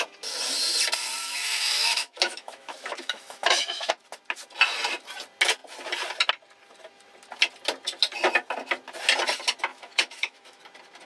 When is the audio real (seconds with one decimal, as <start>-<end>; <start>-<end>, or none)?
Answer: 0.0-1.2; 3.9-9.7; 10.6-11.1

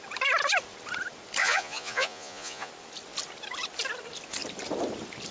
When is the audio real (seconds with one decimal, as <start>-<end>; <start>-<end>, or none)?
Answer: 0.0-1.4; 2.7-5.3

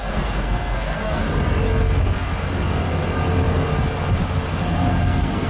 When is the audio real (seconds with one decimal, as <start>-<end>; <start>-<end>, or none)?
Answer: 1.2-4.5